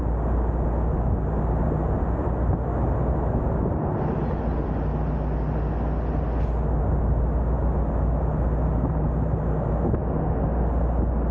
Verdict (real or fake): real